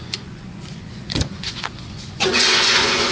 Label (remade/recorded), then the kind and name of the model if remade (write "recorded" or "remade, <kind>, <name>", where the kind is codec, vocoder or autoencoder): remade, vocoder, Vocos